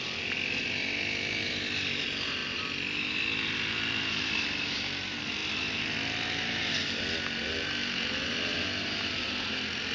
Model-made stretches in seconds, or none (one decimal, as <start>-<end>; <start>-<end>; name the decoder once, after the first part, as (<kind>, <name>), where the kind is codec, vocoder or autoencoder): none